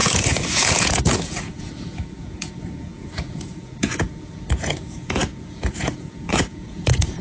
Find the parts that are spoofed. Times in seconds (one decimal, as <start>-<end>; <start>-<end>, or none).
0.0-7.2